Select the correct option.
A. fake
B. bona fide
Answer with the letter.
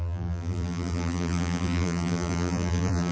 A